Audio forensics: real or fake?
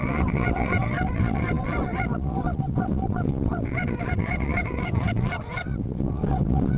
fake